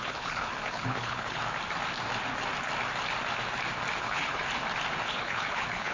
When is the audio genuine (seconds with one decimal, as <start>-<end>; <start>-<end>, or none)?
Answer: 1.4-4.0; 4.4-5.0